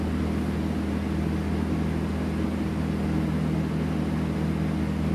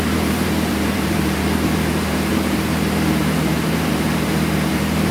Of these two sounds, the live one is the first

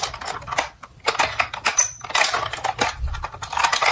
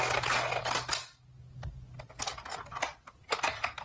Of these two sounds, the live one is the second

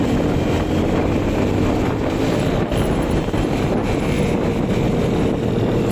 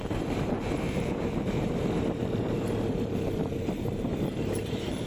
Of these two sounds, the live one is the first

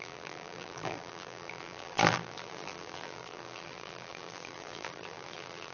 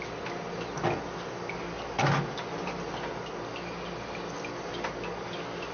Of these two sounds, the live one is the second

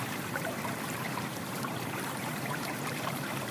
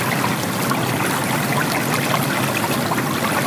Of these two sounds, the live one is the second